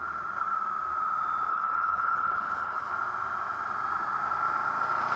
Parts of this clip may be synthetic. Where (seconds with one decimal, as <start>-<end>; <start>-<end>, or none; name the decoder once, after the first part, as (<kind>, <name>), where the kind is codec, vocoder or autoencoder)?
1.5-2.9 (codec, HILCodec)